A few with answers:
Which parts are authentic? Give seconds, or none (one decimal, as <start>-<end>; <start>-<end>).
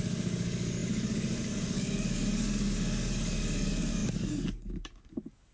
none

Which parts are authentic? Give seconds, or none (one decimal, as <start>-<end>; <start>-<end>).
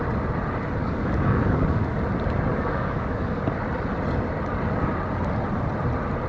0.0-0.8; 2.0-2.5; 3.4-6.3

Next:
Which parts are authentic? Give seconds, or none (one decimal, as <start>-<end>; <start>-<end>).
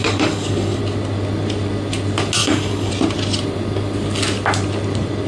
0.8-2.4; 2.9-5.3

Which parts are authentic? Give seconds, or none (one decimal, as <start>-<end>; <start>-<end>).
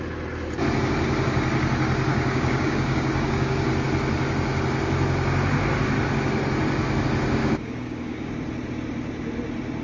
0.0-2.1; 3.7-7.4; 8.3-9.8